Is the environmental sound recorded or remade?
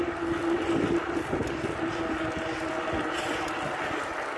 recorded